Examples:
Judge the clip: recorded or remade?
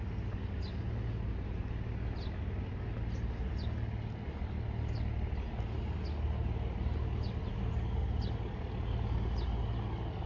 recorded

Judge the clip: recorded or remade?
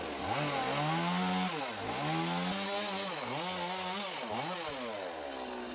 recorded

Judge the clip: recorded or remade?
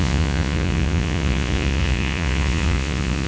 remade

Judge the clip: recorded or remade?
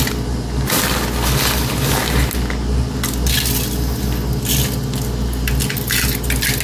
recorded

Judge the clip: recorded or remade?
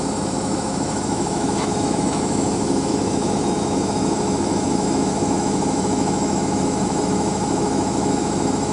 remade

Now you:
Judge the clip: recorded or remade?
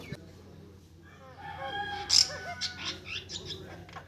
recorded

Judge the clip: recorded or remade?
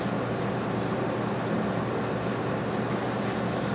recorded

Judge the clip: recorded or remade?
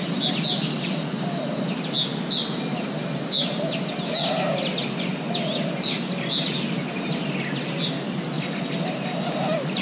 recorded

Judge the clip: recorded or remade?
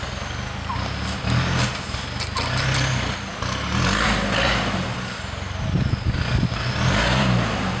recorded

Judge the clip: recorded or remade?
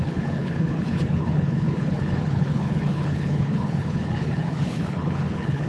remade